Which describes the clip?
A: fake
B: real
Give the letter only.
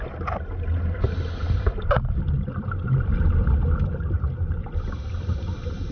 B